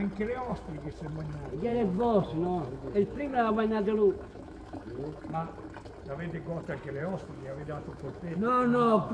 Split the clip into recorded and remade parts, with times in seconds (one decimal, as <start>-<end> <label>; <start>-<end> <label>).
0.0-0.5 recorded; 0.5-1.1 remade; 1.1-1.7 recorded; 1.7-5.2 remade; 5.2-7.0 recorded; 7.0-9.1 remade

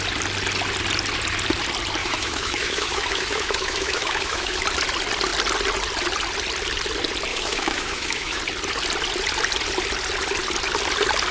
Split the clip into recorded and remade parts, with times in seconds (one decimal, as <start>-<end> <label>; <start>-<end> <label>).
0.0-2.0 recorded; 2.0-4.6 remade; 4.6-7.3 recorded; 7.3-8.4 remade; 8.4-11.3 recorded

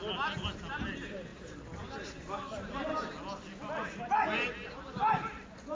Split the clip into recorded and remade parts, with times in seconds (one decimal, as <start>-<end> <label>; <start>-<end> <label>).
0.0-5.7 recorded

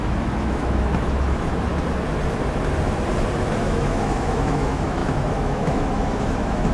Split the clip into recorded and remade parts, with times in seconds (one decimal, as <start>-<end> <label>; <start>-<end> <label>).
0.0-1.7 remade; 1.7-3.6 recorded; 3.6-6.7 remade

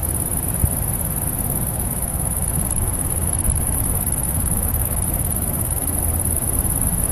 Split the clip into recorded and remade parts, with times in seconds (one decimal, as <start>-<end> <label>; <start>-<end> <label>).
0.0-1.7 recorded; 1.7-6.0 remade; 6.0-7.1 recorded

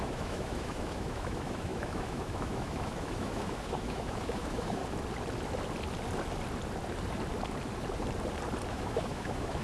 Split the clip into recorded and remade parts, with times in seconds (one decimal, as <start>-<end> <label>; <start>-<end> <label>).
0.0-4.8 remade; 4.8-8.7 recorded; 8.7-9.6 remade

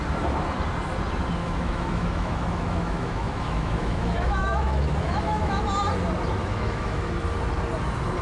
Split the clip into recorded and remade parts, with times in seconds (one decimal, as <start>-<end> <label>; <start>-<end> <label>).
0.0-1.4 recorded; 1.4-5.6 remade; 5.6-6.4 recorded; 6.4-7.1 remade; 7.1-8.2 recorded